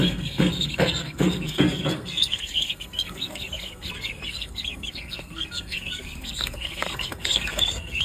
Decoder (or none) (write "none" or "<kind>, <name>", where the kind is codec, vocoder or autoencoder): codec, SNAC